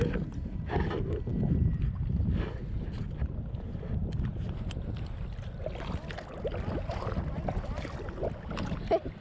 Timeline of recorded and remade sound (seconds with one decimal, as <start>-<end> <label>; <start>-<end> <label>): 0.0-9.2 recorded